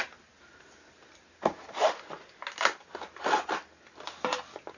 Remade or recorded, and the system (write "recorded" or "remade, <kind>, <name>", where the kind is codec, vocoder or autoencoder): recorded